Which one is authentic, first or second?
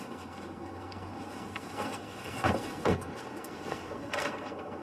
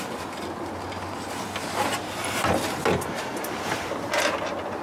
second